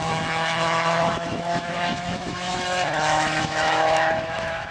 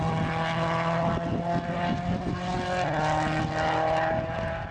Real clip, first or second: second